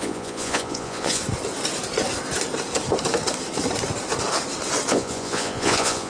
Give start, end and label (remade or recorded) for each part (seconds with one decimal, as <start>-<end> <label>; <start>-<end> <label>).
0.0-1.2 remade; 1.2-4.9 recorded; 4.9-6.1 remade